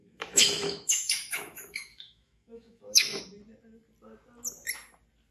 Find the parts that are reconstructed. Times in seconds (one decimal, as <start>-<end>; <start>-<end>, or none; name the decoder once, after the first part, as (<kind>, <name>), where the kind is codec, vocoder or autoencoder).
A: 0.0-3.2 (autoencoder, DAC-VAE)